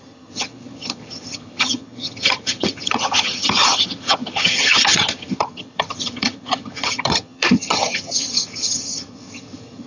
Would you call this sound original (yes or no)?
no